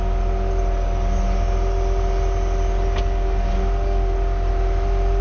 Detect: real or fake real